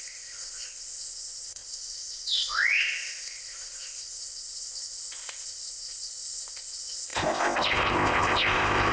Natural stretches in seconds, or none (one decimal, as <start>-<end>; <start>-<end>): none